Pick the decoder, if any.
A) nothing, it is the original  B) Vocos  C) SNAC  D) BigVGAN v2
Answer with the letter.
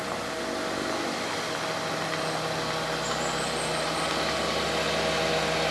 A